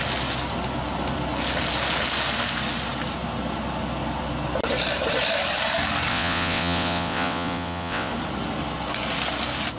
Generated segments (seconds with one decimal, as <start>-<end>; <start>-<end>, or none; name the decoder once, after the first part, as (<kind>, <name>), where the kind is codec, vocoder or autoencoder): 6.1-8.1 (vocoder, WaveNeXt)